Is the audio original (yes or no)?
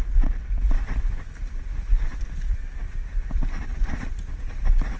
no